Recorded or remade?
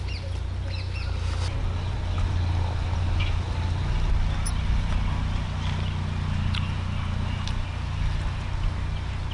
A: recorded